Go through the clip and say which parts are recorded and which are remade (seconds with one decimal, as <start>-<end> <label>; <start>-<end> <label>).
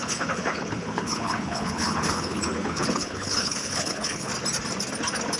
0.0-4.3 remade; 4.3-5.4 recorded